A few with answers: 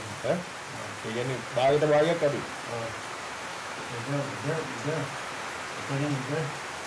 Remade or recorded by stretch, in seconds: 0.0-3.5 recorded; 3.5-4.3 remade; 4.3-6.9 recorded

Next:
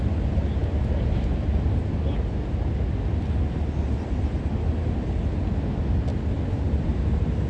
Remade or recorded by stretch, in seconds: 0.0-7.5 recorded

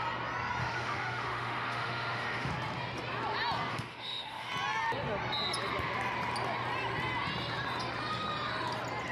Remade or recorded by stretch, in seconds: 0.0-0.6 recorded; 0.6-2.5 remade; 2.5-3.7 recorded; 3.7-4.5 remade; 4.5-9.1 recorded

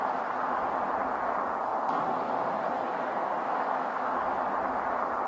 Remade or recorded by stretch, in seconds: 0.0-3.2 recorded; 3.2-4.1 remade; 4.1-5.3 recorded